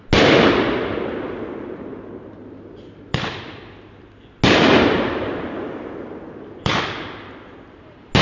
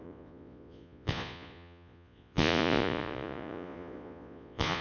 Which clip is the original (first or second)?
first